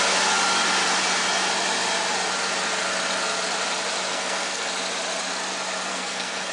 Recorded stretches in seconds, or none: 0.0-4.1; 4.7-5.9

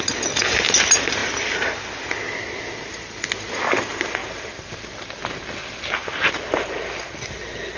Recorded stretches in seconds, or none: 0.0-7.8

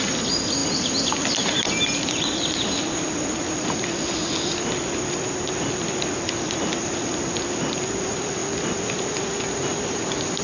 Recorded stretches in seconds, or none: 0.0-10.4

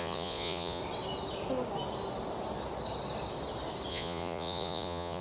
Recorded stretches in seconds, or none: 0.8-3.9

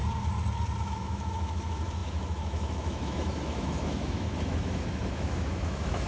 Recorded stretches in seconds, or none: 0.0-0.8

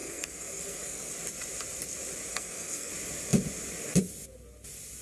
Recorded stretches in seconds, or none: 1.1-2.3; 2.9-5.0

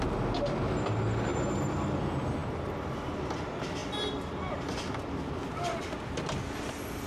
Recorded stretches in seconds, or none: 0.0-7.1

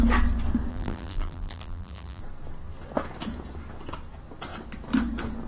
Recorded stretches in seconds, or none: 0.0-0.7; 2.2-5.5